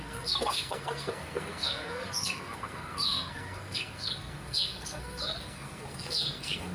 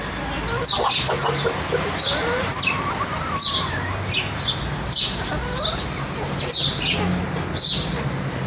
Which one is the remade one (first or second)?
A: first